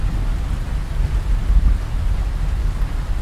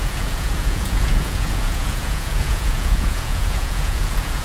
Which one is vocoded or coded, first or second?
second